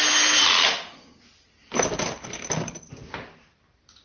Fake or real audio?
real